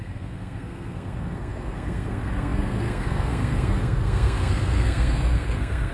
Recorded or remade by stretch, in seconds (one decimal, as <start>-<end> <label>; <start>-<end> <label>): 0.0-5.9 remade